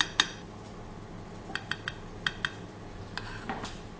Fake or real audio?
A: real